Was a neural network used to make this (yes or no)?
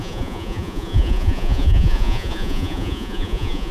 yes